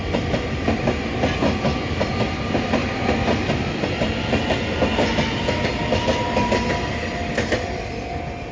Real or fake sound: real